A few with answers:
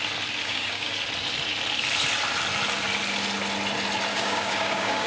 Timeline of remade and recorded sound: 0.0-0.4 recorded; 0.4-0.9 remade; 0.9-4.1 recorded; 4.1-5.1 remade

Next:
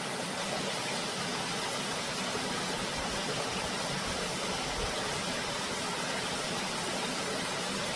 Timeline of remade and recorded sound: 0.0-5.2 recorded; 5.2-6.3 remade; 6.3-8.0 recorded

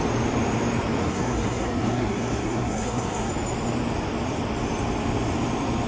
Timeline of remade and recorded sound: 0.0-1.0 recorded; 1.0-3.3 remade; 3.3-5.9 recorded

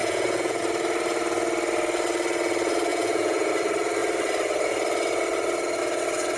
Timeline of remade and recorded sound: 0.0-0.6 remade; 0.6-2.9 recorded; 2.9-3.5 remade; 3.5-6.4 recorded